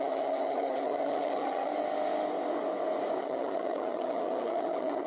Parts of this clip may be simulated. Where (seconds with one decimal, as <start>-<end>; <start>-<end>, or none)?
0.0-1.7; 3.2-5.1